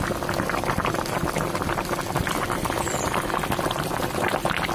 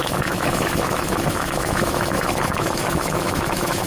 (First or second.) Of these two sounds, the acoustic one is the first